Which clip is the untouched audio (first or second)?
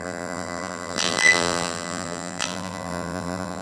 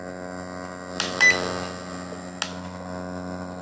second